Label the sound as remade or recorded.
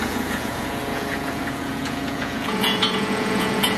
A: remade